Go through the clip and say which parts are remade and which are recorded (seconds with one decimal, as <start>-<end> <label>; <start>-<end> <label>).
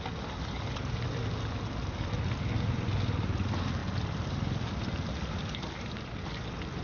0.0-3.8 recorded; 3.8-6.8 remade